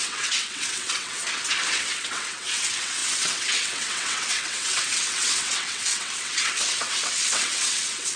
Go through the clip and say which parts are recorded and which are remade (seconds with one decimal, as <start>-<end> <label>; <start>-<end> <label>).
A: 0.0-1.2 remade; 1.2-1.7 recorded; 1.7-8.2 remade